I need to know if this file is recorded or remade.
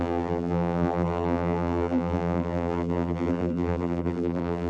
remade